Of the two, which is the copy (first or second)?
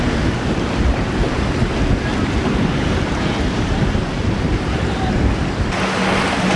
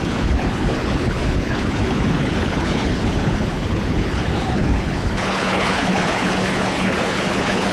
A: second